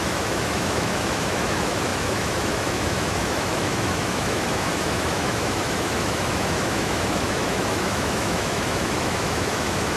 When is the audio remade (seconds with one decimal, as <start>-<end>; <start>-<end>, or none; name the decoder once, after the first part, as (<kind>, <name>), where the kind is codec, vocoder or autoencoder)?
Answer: 0.0-10.0 (autoencoder, DAC-VAE)